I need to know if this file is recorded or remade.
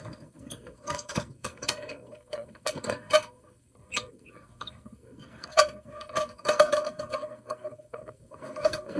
remade